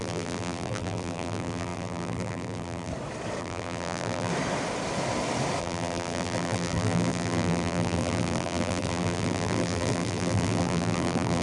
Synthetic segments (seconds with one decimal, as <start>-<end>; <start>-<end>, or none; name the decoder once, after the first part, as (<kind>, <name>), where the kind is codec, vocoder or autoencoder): 0.0-2.9 (vocoder, BigVGAN v2); 3.4-4.3; 5.6-11.4